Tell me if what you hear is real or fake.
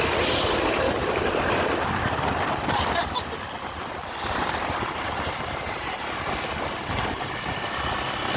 real